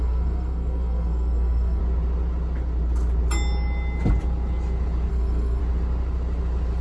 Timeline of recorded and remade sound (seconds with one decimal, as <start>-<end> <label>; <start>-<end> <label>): 0.0-1.8 remade; 1.8-5.1 recorded; 5.1-5.6 remade; 5.6-6.8 recorded